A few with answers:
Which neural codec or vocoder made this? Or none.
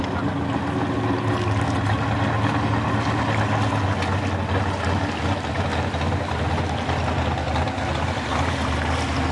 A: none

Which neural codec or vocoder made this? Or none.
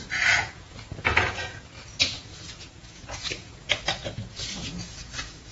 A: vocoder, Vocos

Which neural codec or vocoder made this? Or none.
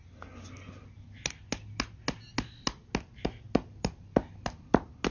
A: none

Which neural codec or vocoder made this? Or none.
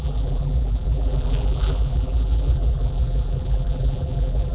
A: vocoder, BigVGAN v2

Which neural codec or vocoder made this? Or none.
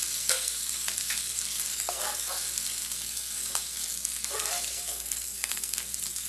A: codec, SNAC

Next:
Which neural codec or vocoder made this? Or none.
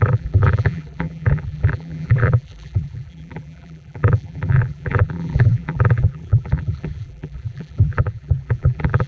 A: vocoder, BigVGAN v2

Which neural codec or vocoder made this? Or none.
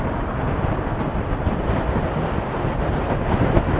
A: none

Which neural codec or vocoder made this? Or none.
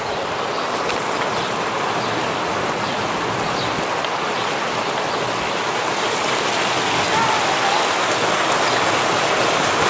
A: none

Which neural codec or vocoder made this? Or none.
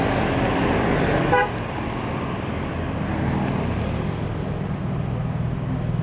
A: none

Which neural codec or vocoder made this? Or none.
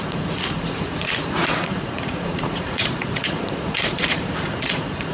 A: vocoder, Vocos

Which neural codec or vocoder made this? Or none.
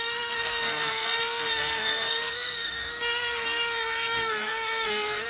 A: codec, SNAC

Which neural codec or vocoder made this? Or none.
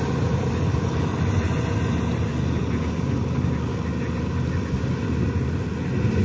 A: none